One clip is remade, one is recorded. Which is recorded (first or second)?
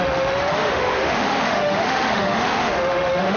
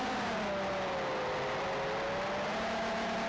second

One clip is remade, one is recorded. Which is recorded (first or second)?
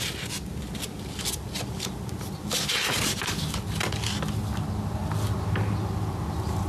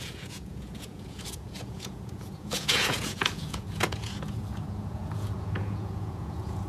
first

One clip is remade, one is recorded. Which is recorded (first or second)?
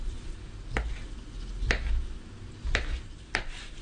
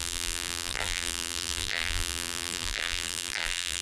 first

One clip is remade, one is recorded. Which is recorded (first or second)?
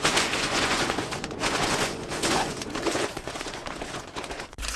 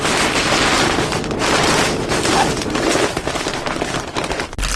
second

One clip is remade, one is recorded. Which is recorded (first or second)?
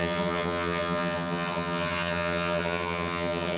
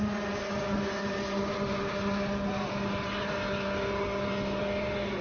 second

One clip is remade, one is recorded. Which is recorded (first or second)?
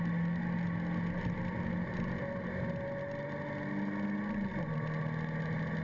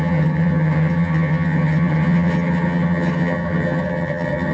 first